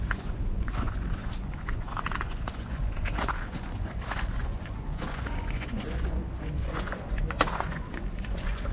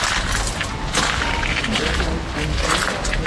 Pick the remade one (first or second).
first